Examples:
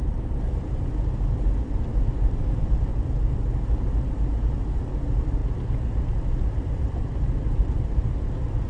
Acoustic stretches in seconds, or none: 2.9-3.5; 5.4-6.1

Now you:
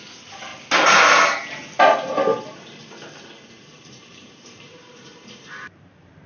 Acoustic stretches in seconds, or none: 0.5-3.5

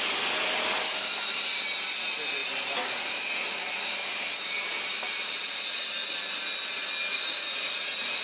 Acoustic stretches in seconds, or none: 0.0-2.4; 6.2-8.2

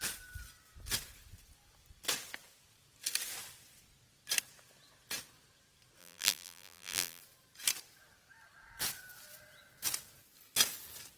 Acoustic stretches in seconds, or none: 0.0-6.0; 7.2-11.2

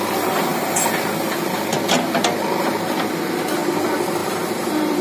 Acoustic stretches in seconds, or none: 0.0-4.2